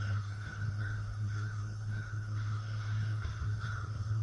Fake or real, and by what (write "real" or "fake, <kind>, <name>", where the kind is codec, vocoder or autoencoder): fake, codec, SNAC